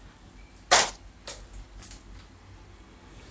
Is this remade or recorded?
recorded